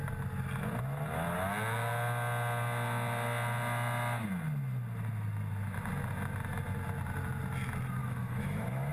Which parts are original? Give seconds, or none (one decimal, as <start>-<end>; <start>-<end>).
0.0-8.0